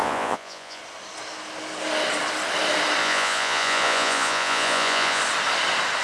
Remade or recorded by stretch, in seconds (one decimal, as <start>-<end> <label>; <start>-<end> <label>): 0.0-0.8 remade; 0.8-3.0 recorded; 3.0-5.2 remade; 5.2-6.0 recorded